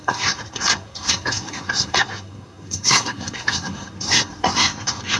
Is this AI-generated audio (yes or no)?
yes